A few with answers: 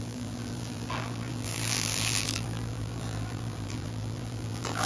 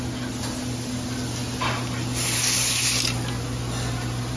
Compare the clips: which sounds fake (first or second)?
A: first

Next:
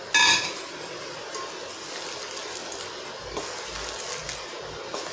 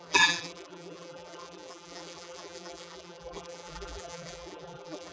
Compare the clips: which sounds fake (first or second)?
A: second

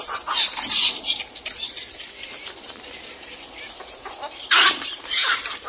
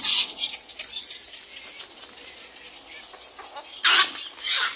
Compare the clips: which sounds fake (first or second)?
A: first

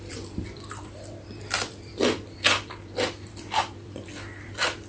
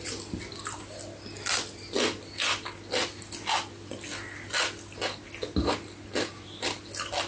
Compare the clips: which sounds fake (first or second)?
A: first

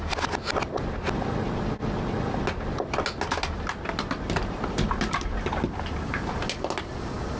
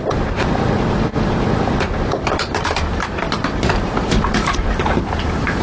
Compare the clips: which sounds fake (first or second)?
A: second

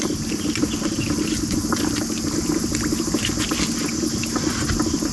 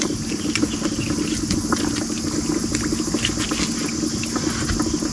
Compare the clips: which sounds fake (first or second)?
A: first